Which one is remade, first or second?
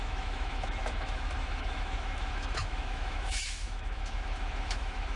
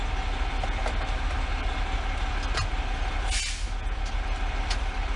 first